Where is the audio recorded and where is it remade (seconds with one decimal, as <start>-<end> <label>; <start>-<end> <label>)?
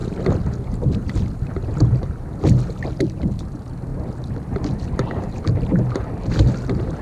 0.0-2.7 remade; 2.7-3.9 recorded; 3.9-4.7 remade; 4.7-7.0 recorded